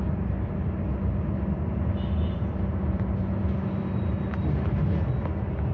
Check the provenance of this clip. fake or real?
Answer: real